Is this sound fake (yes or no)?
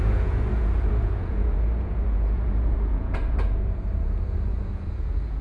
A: yes